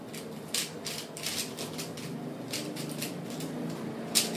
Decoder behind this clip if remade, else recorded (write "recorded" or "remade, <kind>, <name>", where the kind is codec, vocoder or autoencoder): recorded